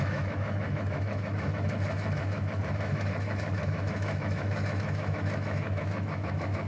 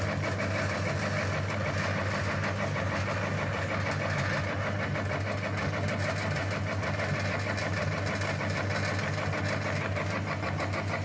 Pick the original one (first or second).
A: second